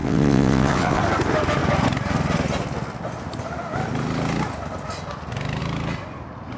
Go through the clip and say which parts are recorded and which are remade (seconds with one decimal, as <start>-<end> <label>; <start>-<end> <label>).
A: 0.0-1.0 remade; 1.0-6.6 recorded